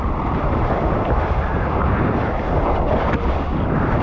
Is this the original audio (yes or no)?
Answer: yes